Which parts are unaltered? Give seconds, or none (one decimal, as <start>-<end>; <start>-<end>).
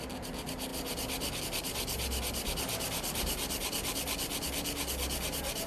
0.0-5.7